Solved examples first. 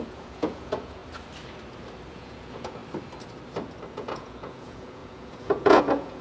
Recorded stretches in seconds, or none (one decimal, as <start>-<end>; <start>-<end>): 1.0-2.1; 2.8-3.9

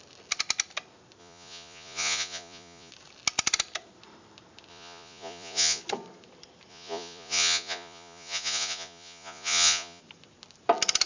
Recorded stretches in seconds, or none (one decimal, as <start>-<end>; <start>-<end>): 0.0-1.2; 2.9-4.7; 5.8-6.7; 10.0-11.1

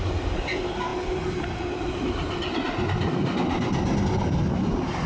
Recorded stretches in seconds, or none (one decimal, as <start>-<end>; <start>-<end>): 0.0-5.1

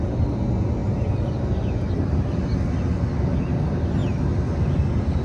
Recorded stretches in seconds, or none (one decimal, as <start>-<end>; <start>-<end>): 0.0-5.2

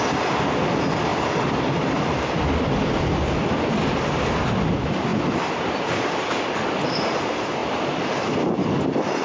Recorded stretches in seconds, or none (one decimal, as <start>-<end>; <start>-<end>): 0.0-9.2

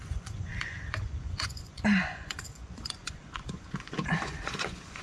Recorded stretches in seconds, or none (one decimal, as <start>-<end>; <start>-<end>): none